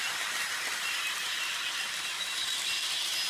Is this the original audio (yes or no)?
yes